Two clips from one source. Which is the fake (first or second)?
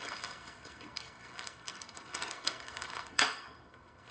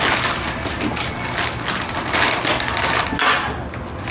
first